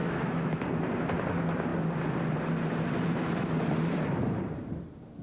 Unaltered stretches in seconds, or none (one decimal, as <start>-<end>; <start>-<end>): 0.7-5.2